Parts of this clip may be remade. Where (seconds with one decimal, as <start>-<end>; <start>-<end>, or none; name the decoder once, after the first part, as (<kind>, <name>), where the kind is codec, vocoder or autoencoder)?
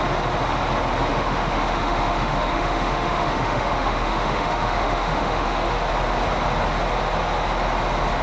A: 1.1-5.7 (autoencoder, DAC-VAE)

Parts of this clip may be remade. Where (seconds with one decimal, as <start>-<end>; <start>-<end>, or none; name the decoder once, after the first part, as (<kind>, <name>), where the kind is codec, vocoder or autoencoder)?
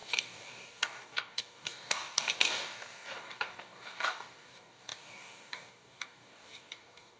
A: 0.0-7.2 (codec, DAC)